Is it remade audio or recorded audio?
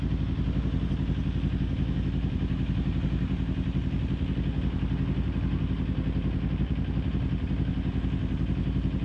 recorded